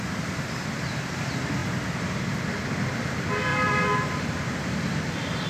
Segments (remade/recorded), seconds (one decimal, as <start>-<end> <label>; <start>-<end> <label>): 0.0-3.5 recorded; 3.5-5.5 remade